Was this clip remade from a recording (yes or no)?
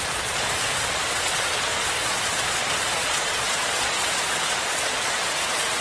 yes